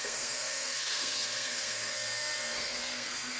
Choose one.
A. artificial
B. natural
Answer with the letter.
A